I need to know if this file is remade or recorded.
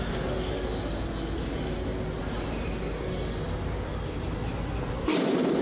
recorded